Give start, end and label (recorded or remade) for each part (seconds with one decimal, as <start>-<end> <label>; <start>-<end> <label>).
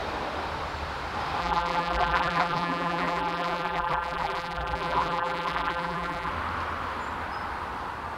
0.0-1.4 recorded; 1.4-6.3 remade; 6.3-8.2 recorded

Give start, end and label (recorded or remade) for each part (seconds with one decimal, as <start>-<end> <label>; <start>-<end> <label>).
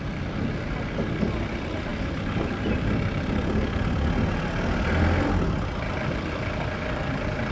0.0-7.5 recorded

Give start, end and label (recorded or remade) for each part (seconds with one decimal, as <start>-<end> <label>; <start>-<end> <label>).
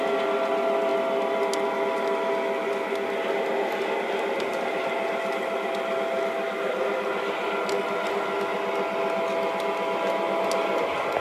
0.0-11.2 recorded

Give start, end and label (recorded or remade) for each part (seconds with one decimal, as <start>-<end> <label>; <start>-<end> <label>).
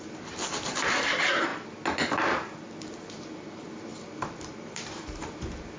0.0-1.5 remade; 1.5-2.8 recorded; 2.8-3.9 remade; 3.9-4.5 recorded; 4.5-5.8 remade